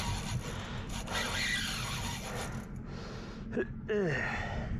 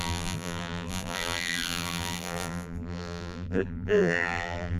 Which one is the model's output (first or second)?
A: second